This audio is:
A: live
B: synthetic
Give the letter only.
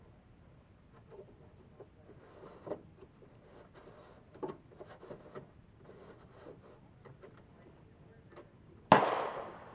A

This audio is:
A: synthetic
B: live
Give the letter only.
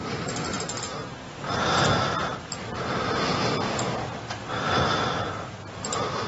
B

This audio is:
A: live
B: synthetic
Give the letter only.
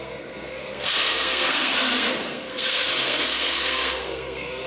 B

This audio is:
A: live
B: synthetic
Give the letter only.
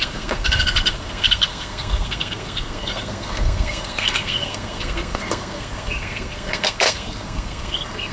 B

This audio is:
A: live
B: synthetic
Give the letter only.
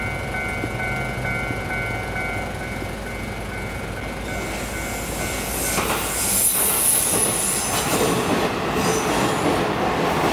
A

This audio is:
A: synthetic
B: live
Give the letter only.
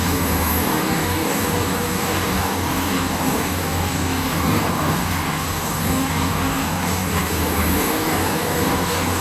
A